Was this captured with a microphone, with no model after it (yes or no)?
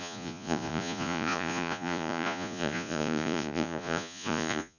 no